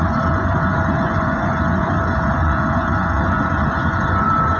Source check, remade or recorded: remade